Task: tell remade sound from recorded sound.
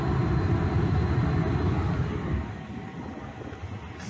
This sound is recorded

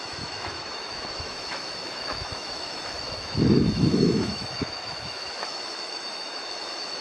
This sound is remade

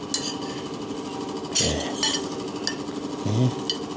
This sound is recorded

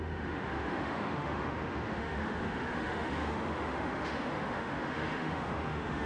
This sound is remade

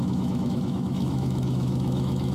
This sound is remade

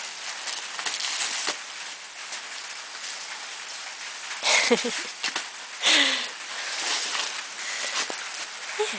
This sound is recorded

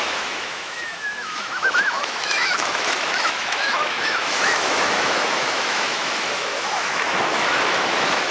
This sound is remade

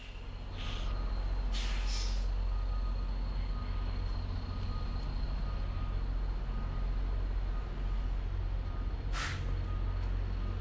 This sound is recorded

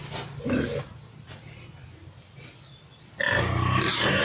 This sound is recorded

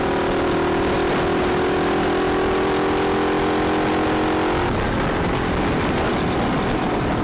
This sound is recorded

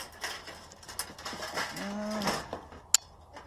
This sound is recorded